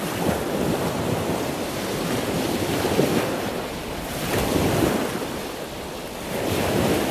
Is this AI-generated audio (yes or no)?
yes